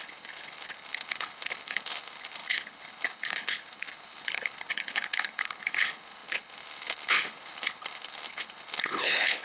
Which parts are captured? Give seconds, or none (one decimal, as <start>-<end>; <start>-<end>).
none